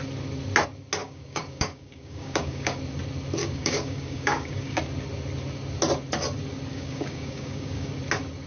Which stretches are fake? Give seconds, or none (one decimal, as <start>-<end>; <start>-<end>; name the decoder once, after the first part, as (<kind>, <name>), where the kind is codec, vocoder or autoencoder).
1.0-2.8 (codec, DAC); 3.4-4.8; 6.7-7.9